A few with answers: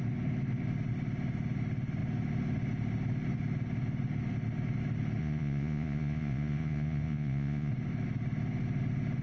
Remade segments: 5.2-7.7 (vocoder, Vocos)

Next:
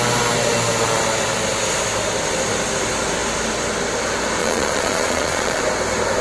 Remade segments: 4.4-5.6 (vocoder, Vocos)

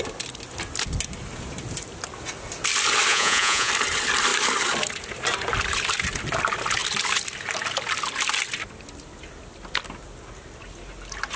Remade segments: 3.1-3.7 (vocoder, Vocos)

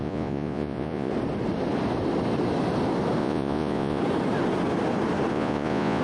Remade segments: 0.0-1.1 (vocoder, Vocos); 3.2-4.0; 5.3-6.0

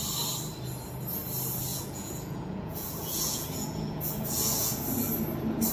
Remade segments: 1.7-4.8 (vocoder, Vocos)

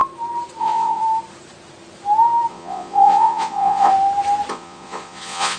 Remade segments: 0.6-1.0 (vocoder, Vocos); 2.5-3.9; 4.5-5.6

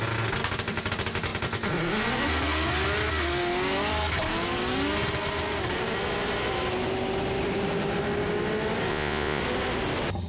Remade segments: 8.9-9.4 (vocoder, Vocos)